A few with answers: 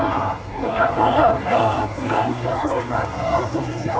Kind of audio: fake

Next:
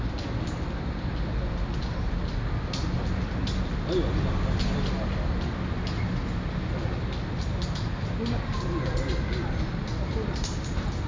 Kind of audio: real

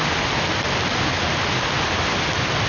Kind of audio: real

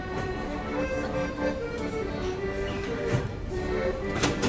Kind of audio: fake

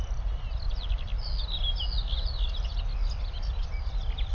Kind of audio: real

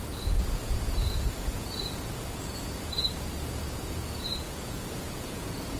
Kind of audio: fake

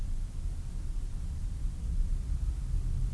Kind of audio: real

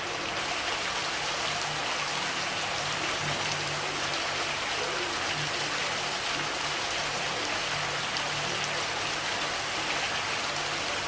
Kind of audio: real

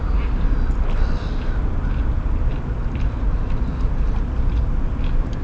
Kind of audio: real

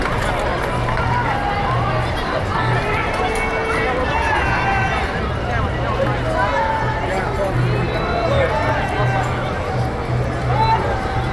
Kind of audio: real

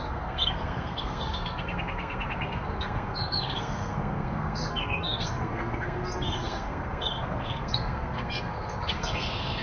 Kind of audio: fake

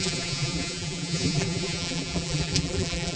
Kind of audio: fake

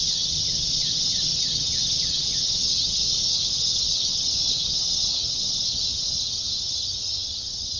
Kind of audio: fake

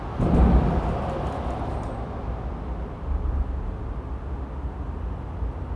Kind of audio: real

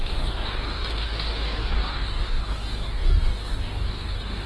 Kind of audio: fake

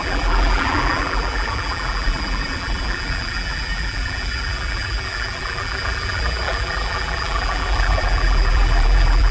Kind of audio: fake